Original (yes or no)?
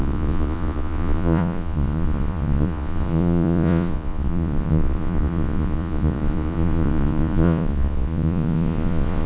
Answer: no